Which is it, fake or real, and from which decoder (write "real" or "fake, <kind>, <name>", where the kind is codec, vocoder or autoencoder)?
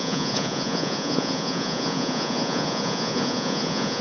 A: fake, vocoder, Vocos